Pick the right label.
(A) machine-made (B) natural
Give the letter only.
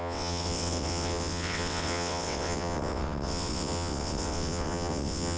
A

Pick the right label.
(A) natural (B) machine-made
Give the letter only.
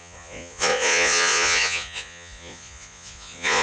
B